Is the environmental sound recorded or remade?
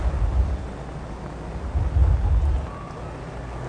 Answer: recorded